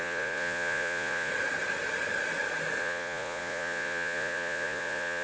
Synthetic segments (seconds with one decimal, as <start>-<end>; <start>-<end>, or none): 0.0-1.3; 2.8-5.2